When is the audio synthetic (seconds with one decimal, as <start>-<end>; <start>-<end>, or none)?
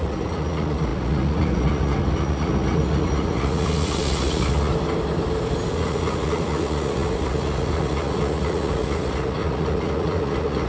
0.0-4.7; 5.7-10.7